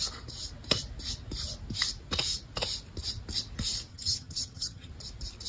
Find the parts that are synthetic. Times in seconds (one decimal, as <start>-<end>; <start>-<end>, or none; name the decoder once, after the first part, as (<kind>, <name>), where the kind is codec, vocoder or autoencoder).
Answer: 3.9-4.9 (vocoder, HiFi-GAN)

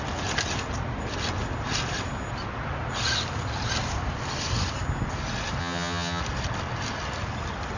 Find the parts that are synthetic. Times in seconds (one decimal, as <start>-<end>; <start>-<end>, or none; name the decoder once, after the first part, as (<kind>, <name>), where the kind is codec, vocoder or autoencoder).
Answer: 5.6-6.2 (vocoder, HiFi-GAN)

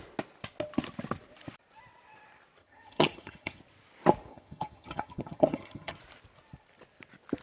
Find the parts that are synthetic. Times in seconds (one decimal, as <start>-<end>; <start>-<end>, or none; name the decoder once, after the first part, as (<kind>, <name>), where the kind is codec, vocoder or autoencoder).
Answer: 2.6-3.6 (vocoder, HiFi-GAN); 4.3-6.0

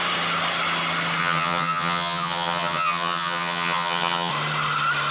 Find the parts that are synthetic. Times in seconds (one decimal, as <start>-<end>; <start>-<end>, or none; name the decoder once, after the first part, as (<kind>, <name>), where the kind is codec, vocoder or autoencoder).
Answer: 1.2-4.3 (vocoder, HiFi-GAN)